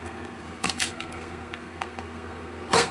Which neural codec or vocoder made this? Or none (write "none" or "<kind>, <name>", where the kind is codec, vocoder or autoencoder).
codec, SNAC